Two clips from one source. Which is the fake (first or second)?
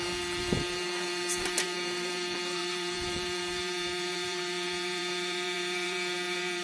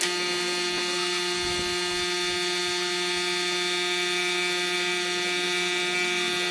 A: first